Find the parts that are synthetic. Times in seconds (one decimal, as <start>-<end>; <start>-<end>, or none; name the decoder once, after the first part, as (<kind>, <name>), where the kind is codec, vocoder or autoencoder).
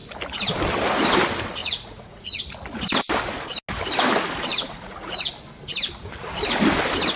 1.6-2.4 (vocoder, Vocos); 4.5-5.3